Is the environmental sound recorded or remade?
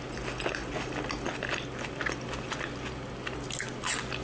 recorded